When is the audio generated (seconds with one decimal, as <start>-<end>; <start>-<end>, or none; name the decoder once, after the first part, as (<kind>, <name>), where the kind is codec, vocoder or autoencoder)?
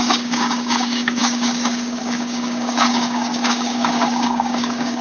0.0-5.0 (codec, DAC)